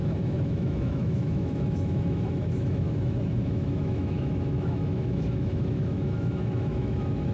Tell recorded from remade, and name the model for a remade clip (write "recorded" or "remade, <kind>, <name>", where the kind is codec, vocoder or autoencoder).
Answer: remade, autoencoder, DAC-VAE